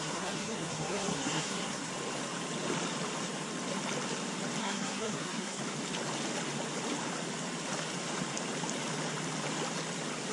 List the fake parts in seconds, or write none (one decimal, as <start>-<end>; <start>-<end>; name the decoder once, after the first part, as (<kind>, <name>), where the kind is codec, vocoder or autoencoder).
0.0-1.9 (codec, SNAC); 4.6-5.6